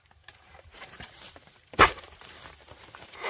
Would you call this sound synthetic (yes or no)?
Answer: yes